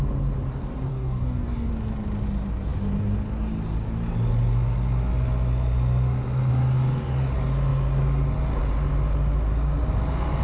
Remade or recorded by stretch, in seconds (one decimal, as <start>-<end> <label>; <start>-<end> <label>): 0.0-0.9 recorded; 0.9-1.7 remade; 1.7-10.4 recorded